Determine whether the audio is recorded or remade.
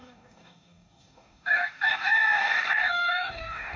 remade